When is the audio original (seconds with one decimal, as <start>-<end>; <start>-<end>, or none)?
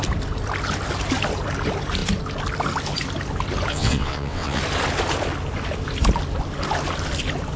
0.0-3.7; 4.6-7.6